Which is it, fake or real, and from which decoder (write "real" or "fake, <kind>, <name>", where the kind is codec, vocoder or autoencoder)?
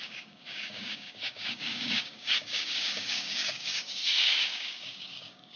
fake, codec, DAC